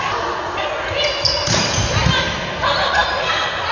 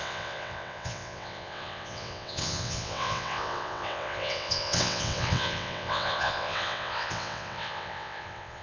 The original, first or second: first